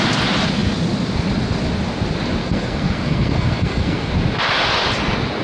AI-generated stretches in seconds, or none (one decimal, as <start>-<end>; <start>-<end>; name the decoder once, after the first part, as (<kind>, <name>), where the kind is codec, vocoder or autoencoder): 2.4-4.1 (codec, SNAC)